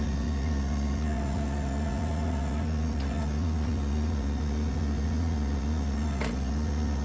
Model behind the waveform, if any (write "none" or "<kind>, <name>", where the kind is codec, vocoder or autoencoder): vocoder, Vocos